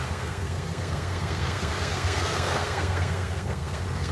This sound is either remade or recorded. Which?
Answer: remade